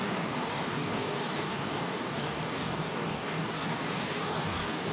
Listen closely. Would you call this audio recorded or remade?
remade